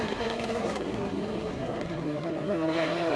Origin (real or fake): fake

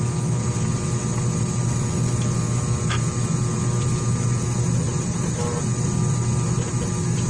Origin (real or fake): real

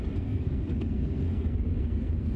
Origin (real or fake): fake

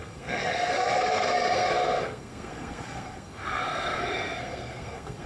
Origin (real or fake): fake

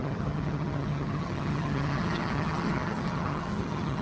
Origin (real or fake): fake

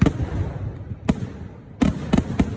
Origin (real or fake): real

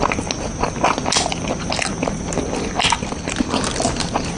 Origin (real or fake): real